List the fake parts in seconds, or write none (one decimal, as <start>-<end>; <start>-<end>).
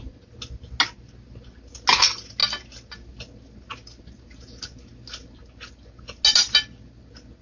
none